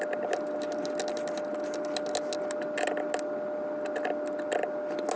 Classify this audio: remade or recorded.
recorded